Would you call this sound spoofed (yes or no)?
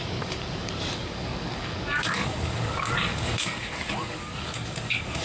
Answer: yes